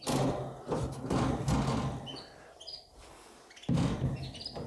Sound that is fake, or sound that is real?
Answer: real